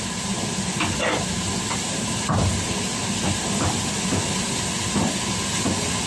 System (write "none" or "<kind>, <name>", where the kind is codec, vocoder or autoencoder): none